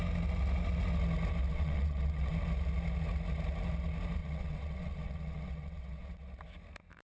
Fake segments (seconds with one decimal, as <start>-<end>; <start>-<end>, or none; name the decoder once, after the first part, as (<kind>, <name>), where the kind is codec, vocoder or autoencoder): 1.5-2.3 (vocoder, WaveNeXt); 4.2-6.3